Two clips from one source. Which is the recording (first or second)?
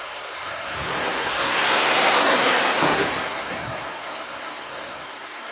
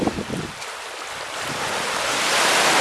second